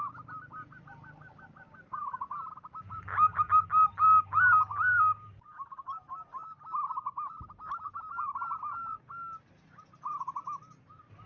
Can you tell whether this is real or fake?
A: real